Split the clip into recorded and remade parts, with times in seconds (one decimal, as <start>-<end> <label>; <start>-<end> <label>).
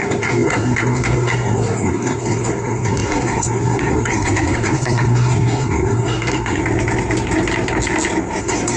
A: 0.0-6.6 remade; 6.6-8.4 recorded; 8.4-8.8 remade